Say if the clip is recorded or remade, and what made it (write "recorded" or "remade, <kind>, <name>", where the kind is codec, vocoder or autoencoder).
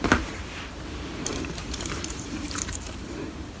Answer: remade, vocoder, BigVGAN v2